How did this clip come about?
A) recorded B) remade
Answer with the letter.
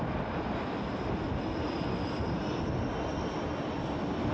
A